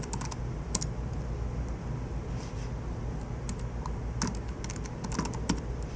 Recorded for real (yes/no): yes